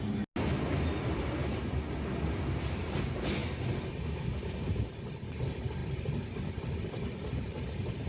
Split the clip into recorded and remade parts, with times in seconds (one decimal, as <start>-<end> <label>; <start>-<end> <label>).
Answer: 0.0-8.1 recorded